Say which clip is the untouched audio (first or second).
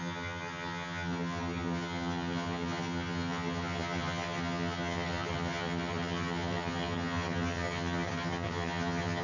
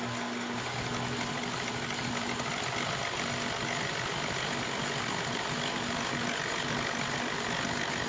second